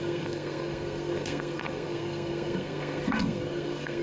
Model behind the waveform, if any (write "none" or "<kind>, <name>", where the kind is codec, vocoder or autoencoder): codec, SNAC